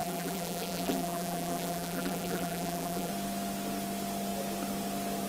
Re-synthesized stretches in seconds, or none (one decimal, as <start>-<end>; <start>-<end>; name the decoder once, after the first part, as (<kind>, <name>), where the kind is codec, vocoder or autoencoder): 0.0-3.1 (vocoder, BigVGAN v2)